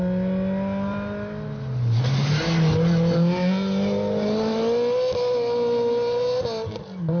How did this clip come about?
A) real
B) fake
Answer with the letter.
A